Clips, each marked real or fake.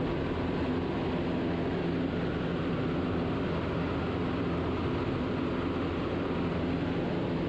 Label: real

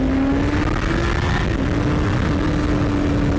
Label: real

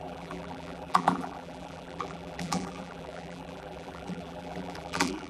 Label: fake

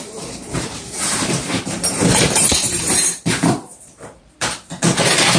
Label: fake